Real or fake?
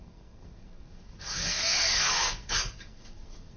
fake